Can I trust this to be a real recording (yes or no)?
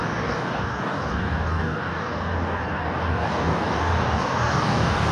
no